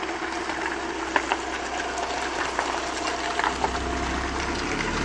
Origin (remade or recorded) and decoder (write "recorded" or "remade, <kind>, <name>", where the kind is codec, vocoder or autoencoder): recorded